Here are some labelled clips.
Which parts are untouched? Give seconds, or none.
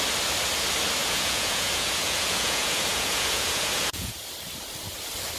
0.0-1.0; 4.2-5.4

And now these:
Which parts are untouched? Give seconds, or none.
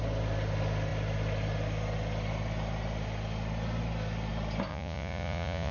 0.0-4.7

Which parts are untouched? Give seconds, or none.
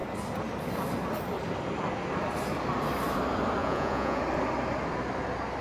0.0-3.6; 4.2-5.6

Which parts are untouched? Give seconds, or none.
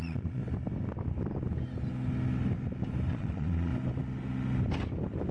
0.4-3.1; 3.7-5.3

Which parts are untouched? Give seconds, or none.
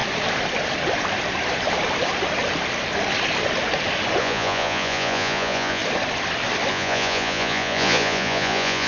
0.0-4.2; 5.8-6.7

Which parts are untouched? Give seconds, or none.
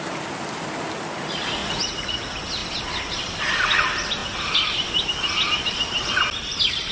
0.0-1.6; 2.2-6.9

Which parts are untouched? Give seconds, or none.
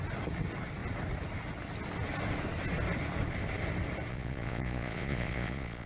0.0-4.1